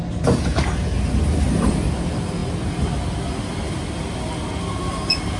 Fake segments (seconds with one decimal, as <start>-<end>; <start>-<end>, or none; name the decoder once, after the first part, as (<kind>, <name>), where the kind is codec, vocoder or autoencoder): none